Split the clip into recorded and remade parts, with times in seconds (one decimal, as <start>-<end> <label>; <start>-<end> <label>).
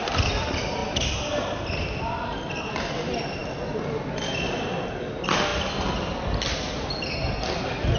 0.0-8.0 recorded